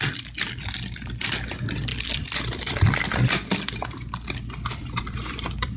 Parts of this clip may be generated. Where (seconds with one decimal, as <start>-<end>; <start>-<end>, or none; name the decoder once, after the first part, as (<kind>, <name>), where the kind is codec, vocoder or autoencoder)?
1.9-5.8 (vocoder, BigVGAN v2)